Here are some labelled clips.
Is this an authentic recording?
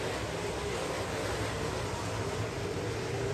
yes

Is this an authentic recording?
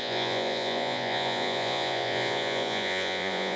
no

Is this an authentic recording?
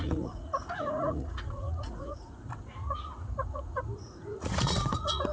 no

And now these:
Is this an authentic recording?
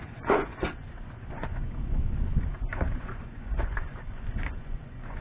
no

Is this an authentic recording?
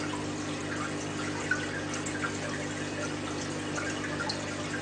yes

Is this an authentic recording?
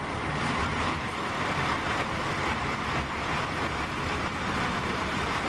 yes